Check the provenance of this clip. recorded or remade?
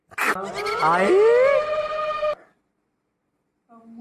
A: recorded